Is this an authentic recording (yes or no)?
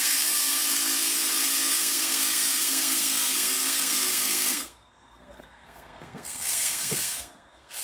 no